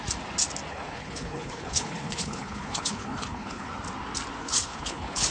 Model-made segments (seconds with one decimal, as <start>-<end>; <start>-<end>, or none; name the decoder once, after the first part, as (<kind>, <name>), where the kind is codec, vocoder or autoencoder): 0.7-3.7 (codec, HILCodec); 4.4-5.3